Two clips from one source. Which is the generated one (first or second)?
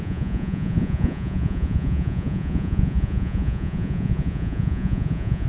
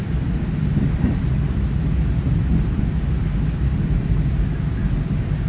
first